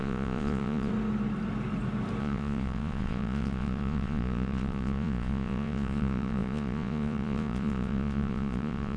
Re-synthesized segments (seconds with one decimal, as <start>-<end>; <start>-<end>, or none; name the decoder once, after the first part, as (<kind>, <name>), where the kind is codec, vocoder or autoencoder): 0.0-0.9 (vocoder, Vocos); 2.2-9.0